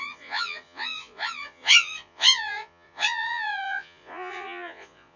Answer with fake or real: fake